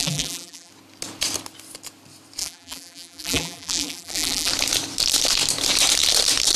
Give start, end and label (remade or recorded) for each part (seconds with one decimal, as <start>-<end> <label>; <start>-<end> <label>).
0.0-0.7 remade; 0.7-2.4 recorded; 2.4-4.5 remade; 4.5-6.6 recorded